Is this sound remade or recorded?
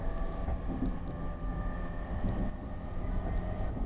recorded